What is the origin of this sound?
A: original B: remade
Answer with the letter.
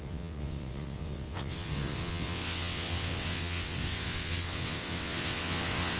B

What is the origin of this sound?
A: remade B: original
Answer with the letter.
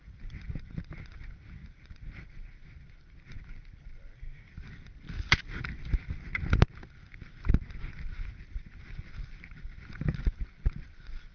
B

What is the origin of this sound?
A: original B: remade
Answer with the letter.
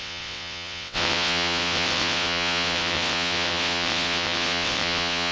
B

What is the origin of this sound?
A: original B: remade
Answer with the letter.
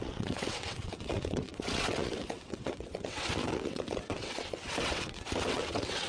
B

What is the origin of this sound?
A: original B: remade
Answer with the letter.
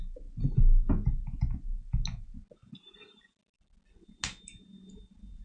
A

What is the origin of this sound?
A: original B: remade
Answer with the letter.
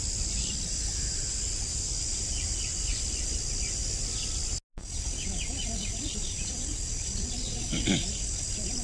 A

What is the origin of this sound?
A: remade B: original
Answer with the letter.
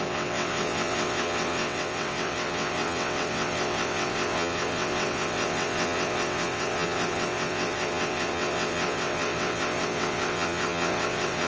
A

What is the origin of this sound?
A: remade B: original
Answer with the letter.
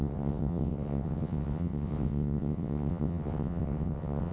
A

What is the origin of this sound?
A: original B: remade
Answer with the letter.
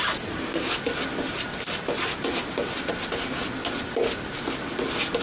A